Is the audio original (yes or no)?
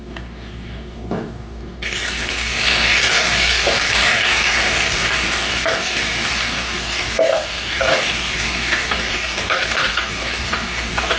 no